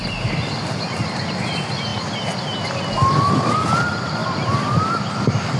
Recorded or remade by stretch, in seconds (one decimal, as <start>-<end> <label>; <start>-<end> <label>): 0.0-5.6 recorded